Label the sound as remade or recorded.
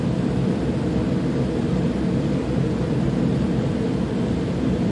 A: remade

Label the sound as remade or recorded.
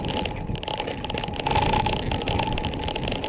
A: recorded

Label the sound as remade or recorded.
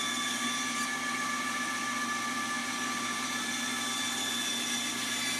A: recorded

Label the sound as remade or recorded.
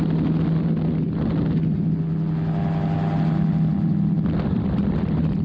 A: recorded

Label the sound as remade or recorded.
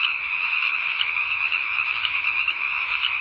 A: remade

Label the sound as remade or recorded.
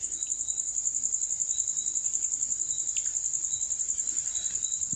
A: recorded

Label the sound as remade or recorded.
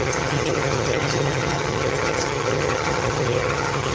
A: remade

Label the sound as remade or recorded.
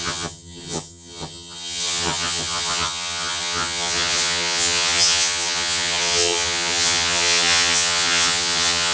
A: remade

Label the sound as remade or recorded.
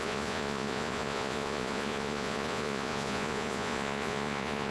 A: remade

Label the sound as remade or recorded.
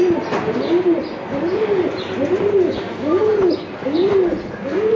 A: recorded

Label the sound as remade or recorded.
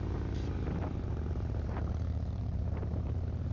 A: remade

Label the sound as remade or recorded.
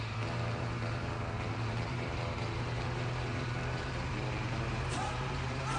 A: remade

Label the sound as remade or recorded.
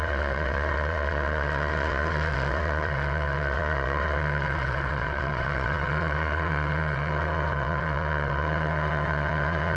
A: remade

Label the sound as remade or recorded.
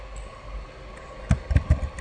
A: recorded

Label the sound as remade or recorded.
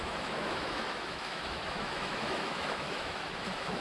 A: remade